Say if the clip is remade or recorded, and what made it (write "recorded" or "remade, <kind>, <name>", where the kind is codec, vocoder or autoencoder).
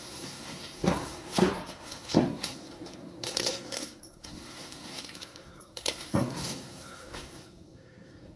remade, codec, SNAC